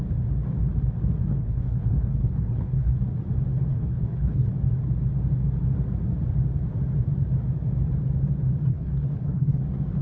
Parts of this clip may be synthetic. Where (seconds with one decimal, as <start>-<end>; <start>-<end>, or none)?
1.3-3.0; 3.7-4.5; 8.7-9.6